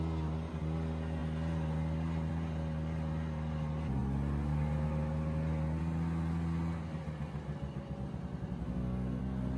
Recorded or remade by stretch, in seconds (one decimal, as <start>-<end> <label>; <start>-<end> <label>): 0.0-8.6 recorded; 8.6-9.2 remade; 9.2-9.6 recorded